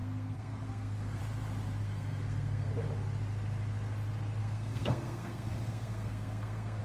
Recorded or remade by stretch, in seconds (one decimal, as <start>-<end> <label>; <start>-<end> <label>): 0.0-1.2 remade; 1.2-1.8 recorded; 1.8-2.7 remade; 2.7-4.4 recorded; 4.4-6.8 remade